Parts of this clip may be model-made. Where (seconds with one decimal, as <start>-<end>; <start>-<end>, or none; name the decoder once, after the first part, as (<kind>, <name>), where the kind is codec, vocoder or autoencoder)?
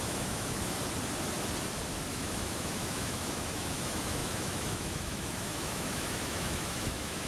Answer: 0.0-0.8 (autoencoder, DAC-VAE); 2.1-7.3